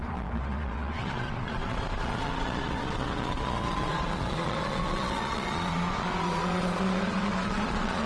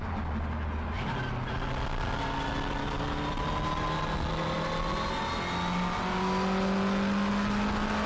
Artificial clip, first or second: first